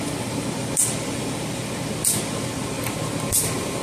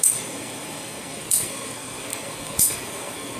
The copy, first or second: second